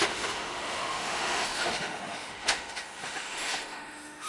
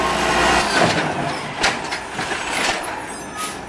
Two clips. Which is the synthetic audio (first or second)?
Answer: first